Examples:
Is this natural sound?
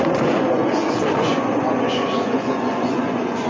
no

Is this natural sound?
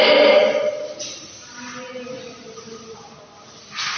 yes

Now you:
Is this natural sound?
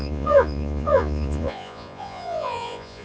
no